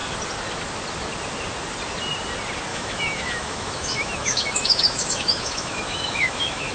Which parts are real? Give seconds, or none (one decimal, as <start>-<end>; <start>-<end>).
0.0-2.7